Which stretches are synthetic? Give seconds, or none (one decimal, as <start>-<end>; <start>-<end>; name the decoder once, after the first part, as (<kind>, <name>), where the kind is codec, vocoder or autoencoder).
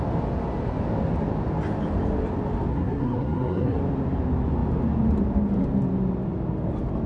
2.7-3.8 (codec, SNAC)